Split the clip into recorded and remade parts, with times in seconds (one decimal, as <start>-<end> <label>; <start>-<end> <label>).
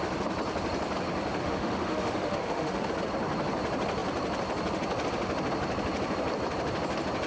0.0-1.4 recorded; 1.4-2.9 remade; 2.9-7.3 recorded